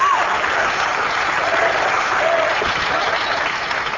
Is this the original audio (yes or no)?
yes